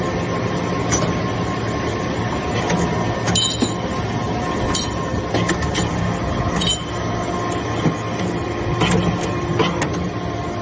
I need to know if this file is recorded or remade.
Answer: recorded